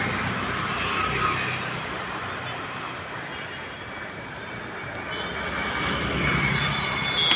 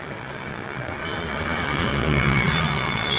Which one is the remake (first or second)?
second